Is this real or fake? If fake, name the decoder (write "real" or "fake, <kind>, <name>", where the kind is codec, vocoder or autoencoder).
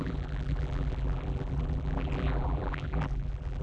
fake, vocoder, BigVGAN v2